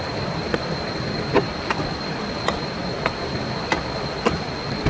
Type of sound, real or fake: real